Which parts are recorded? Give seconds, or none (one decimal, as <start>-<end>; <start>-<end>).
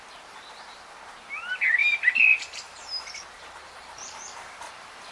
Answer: 1.8-2.4